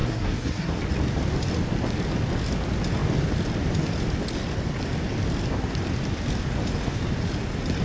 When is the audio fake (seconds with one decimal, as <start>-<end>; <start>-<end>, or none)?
0.0-0.8